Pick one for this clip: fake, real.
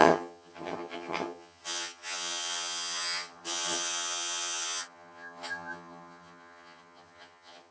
fake